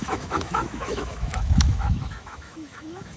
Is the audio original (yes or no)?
no